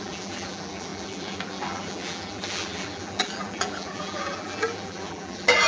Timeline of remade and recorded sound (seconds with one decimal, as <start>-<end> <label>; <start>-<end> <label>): 0.0-5.7 remade

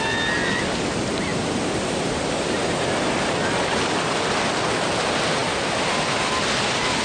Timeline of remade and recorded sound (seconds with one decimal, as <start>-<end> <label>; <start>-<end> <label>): 0.0-1.3 recorded; 1.3-2.1 remade; 2.1-7.0 recorded